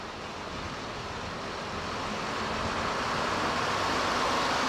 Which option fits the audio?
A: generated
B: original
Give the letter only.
B